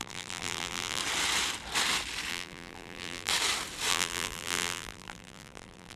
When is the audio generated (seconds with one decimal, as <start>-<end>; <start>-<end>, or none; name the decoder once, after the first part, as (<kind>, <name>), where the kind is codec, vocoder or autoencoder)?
0.0-1.0 (vocoder, BigVGAN v2); 2.3-3.3; 3.9-6.0